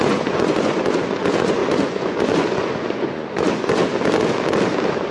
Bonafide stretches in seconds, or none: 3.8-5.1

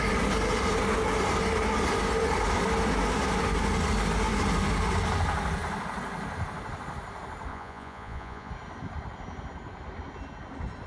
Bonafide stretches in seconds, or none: 0.0-7.5; 8.5-10.9

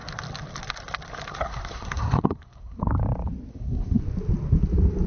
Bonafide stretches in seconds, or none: 0.0-1.3; 2.8-3.5; 4.0-5.1

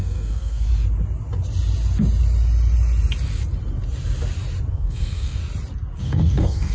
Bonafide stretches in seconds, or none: 0.7-4.7; 5.4-6.0

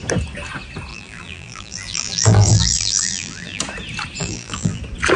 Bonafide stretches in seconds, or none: 0.0-0.9; 3.6-4.2; 4.8-5.2

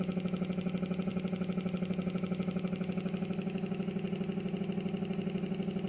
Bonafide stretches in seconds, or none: 0.0-5.9